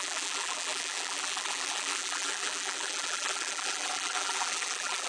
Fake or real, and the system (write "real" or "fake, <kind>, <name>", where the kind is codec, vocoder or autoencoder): fake, vocoder, BigVGAN v2